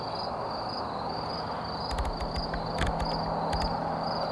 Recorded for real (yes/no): yes